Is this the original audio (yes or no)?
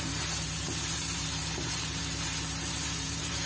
no